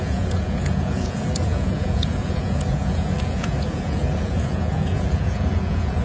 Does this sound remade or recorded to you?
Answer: remade